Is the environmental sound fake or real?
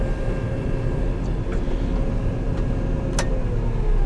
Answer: real